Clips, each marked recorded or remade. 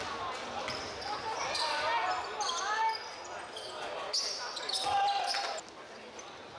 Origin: recorded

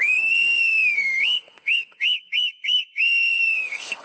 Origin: remade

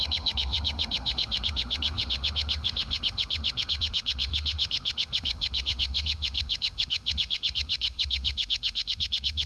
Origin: remade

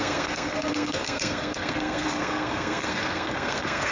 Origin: remade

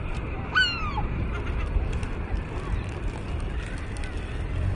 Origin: remade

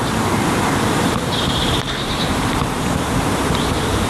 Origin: remade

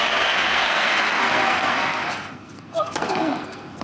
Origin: remade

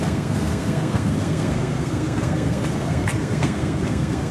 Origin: remade